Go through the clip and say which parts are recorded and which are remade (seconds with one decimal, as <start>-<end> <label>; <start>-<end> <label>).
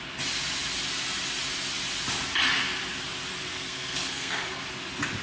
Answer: 0.0-3.5 recorded; 3.5-4.6 remade; 4.6-5.2 recorded